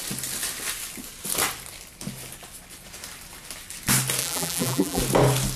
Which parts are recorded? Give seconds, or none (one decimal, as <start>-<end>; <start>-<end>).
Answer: 0.0-4.2; 5.0-5.6